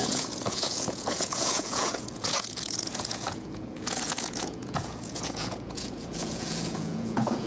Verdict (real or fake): fake